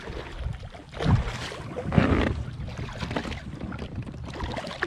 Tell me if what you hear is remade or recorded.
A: recorded